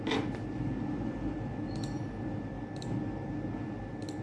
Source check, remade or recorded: recorded